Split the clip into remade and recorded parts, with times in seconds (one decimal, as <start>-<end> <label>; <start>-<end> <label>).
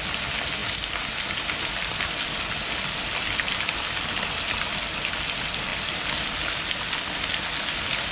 0.0-8.1 recorded